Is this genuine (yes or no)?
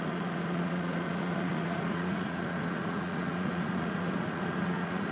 no